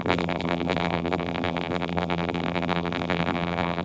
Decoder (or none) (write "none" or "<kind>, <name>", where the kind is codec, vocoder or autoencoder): vocoder, BigVGAN v2